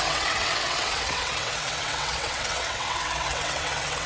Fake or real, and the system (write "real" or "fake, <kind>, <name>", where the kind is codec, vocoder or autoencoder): fake, vocoder, WaveNeXt